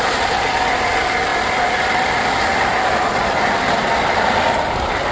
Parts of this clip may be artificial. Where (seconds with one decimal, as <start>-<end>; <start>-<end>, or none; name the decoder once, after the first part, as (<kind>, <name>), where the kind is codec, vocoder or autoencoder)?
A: none